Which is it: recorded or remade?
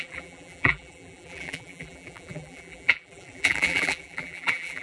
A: remade